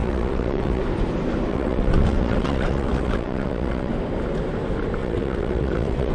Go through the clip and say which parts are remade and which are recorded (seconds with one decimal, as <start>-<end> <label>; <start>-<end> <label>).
0.0-0.8 remade; 0.8-1.5 recorded; 1.5-3.9 remade; 3.9-5.0 recorded; 5.0-6.1 remade